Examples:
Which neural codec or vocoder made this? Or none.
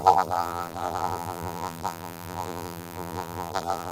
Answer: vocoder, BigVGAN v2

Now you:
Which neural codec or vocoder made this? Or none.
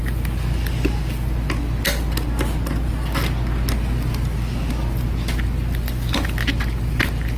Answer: none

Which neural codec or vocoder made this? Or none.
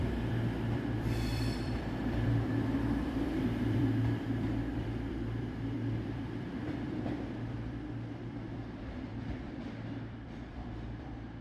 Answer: vocoder, BigVGAN v2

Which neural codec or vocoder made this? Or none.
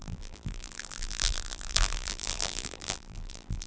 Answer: vocoder, BigVGAN v2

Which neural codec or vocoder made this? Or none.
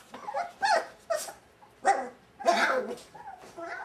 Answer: vocoder, BigVGAN v2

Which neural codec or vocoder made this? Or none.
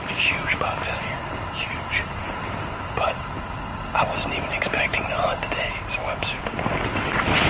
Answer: vocoder, BigVGAN v2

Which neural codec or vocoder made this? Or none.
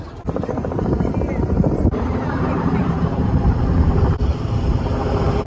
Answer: vocoder, BigVGAN v2